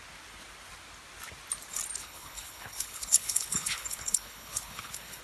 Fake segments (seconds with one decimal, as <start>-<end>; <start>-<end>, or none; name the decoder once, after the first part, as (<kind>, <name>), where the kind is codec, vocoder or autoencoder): 2.0-5.2 (codec, HILCodec)